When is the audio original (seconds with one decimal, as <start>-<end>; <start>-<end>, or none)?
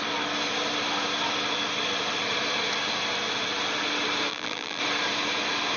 0.0-4.3; 4.8-5.8